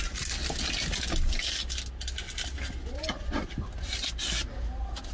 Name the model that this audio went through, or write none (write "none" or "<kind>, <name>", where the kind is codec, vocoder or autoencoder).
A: none